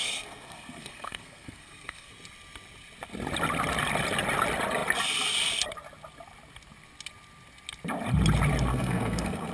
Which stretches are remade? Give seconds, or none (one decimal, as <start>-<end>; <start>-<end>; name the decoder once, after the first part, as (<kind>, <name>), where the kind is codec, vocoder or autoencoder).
0.0-2.1 (codec, SNAC); 8.7-9.5